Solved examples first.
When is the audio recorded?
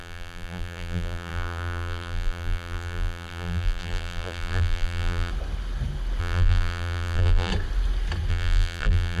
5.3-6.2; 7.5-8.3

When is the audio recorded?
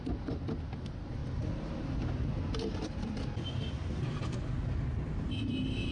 0.0-5.9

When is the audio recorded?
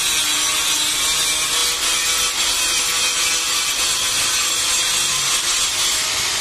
0.0-6.4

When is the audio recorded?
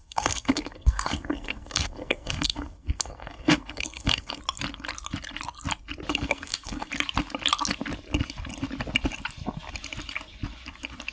4.4-6.1; 6.9-11.1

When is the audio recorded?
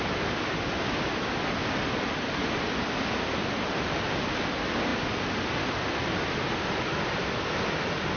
0.0-8.2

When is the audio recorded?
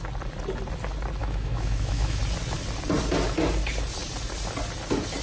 0.0-1.2; 2.2-5.2